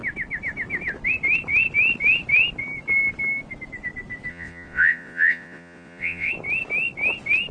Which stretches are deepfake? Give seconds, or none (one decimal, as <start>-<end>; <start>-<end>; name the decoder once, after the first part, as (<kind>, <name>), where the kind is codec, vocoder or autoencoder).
4.3-6.3 (vocoder, Vocos)

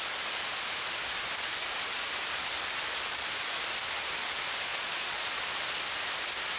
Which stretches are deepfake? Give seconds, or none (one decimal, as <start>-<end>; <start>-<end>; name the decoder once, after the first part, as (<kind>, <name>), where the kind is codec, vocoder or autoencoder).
4.7-5.4 (vocoder, Vocos)

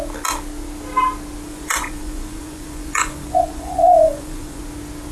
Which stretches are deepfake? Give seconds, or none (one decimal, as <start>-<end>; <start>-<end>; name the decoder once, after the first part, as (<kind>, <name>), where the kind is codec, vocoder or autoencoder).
1.5-4.6 (vocoder, Vocos)